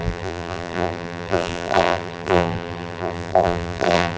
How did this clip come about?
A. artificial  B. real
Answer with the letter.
A